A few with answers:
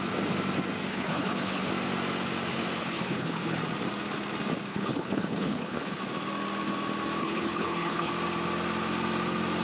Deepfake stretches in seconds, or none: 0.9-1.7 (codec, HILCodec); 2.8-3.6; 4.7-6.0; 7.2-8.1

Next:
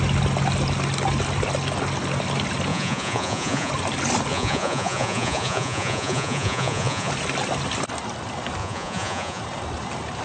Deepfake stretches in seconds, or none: 2.7-3.7 (vocoder, Vocos); 4.3-7.1; 8.6-9.4

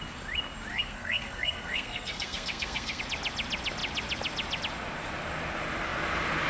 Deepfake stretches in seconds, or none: 0.7-3.0 (codec, SNAC)

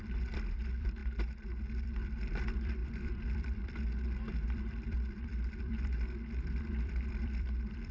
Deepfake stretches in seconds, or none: 0.0-7.9 (vocoder, BigVGAN v2)

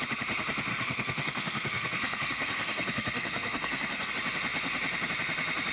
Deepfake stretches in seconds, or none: 0.7-4.1 (codec, SNAC)

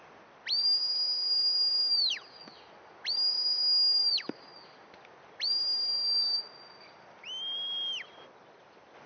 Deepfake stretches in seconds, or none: none

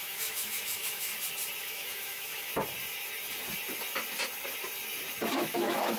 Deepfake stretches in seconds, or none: 0.0-1.1 (autoencoder, DAC-VAE); 1.6-2.5; 5.3-6.0